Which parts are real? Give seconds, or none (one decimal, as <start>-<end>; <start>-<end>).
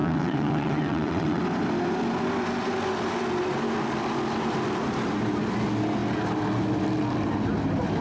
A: 1.4-8.0